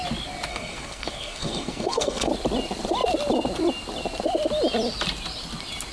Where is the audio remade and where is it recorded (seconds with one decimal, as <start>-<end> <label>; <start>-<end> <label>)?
0.0-0.5 recorded; 0.5-2.3 remade; 2.3-5.9 recorded